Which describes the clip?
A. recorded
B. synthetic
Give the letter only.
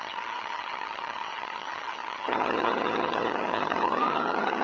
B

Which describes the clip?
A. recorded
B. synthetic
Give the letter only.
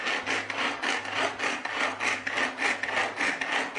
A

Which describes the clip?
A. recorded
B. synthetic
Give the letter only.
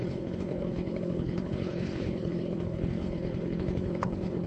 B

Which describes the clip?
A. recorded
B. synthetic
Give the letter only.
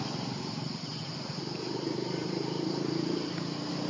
B